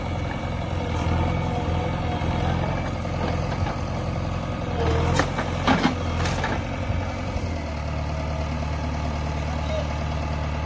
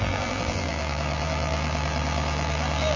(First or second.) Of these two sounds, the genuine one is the first